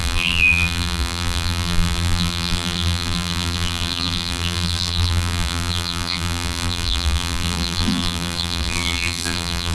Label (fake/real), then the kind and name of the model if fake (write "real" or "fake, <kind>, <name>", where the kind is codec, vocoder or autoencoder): fake, vocoder, BigVGAN v2